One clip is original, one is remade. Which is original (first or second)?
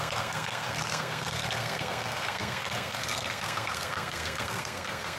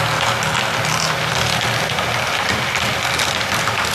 second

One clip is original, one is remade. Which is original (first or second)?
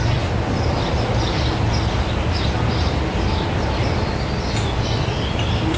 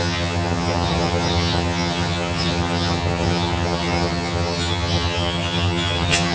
first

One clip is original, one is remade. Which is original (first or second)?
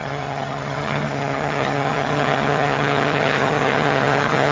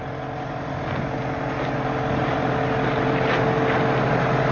second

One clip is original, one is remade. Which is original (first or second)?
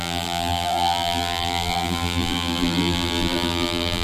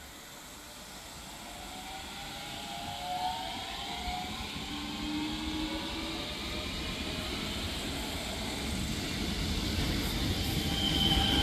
second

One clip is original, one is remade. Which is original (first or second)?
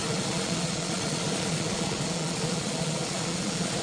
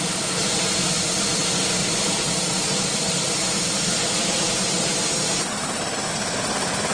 second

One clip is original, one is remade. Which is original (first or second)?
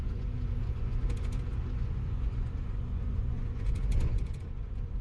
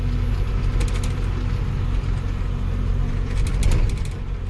second